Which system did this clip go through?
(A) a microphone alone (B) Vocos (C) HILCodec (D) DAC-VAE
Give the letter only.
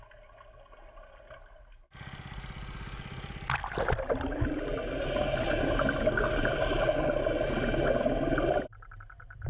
A